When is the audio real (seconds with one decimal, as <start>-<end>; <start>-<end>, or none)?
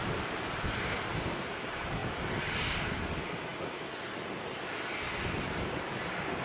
0.0-6.4